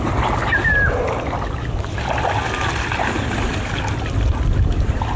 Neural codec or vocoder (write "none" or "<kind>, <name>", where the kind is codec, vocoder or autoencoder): none